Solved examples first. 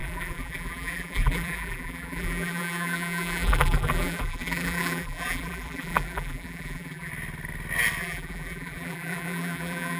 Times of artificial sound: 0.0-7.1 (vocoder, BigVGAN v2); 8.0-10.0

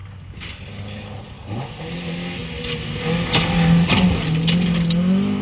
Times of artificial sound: none

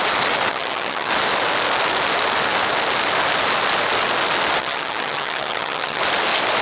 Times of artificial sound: 0.5-1.1 (vocoder, HiFi-GAN); 4.6-6.0